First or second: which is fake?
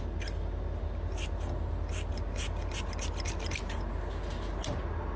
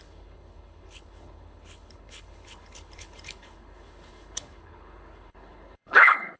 second